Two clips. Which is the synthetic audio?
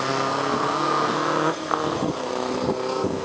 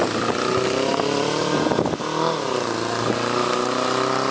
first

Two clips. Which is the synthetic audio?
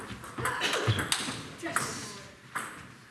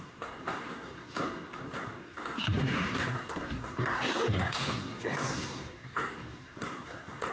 second